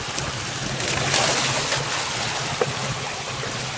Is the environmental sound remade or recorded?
recorded